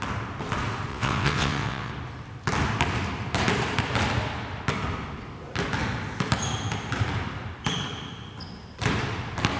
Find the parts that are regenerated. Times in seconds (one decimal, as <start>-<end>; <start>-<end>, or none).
0.9-1.9